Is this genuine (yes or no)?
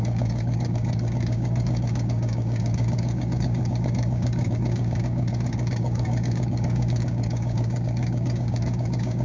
no